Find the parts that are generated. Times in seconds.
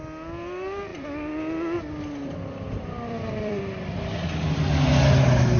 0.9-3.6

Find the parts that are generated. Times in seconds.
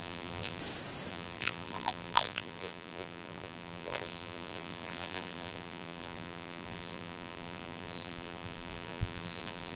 0.0-0.6; 1.1-9.8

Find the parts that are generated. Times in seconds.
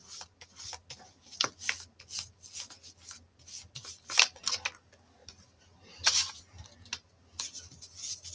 5.2-6.4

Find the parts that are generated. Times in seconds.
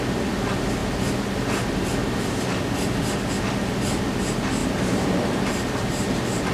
4.6-5.4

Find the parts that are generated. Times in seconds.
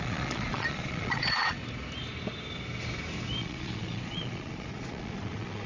0.0-1.6; 3.4-5.7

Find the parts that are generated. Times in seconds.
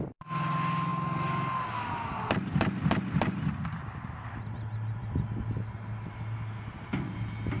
none